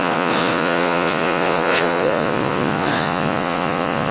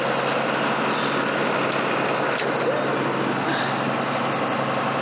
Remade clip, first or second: first